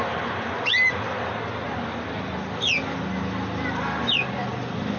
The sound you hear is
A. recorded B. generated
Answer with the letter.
A